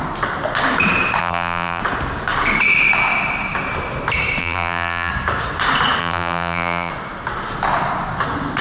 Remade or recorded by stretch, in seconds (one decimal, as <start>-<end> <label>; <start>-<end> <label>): 0.0-1.2 recorded; 1.2-1.8 remade; 1.8-4.4 recorded; 4.4-5.1 remade; 5.1-6.0 recorded; 6.0-6.9 remade; 6.9-8.6 recorded

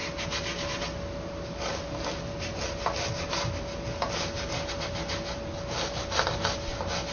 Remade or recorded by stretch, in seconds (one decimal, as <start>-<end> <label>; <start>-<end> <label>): 0.0-7.1 recorded

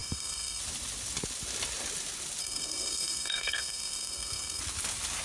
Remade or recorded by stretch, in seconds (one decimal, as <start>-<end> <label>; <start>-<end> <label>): 0.0-0.6 remade; 0.6-2.4 recorded; 2.4-4.6 remade; 4.6-5.2 recorded

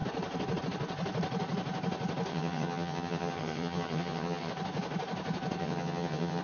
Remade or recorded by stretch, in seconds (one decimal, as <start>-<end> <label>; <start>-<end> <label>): 0.0-2.3 recorded; 2.3-4.5 remade; 4.5-5.6 recorded; 5.6-6.4 remade

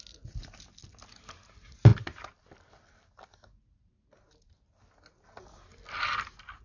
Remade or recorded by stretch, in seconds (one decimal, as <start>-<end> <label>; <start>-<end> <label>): 0.0-6.6 recorded

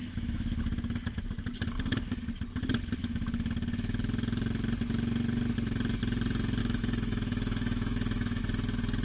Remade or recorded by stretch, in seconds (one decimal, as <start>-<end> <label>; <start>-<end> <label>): 0.0-0.6 remade; 0.6-3.0 recorded; 3.0-3.5 remade; 3.5-6.6 recorded; 6.6-8.4 remade; 8.4-9.0 recorded